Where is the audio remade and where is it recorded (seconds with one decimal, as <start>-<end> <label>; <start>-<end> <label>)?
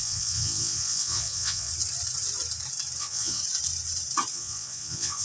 0.0-1.7 remade; 1.7-3.0 recorded; 3.0-3.4 remade; 3.4-4.3 recorded; 4.3-5.2 remade